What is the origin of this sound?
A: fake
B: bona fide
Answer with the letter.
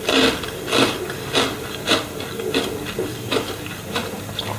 B